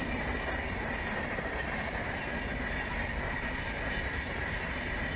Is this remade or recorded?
recorded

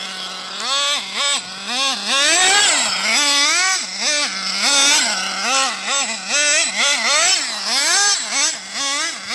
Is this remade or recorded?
recorded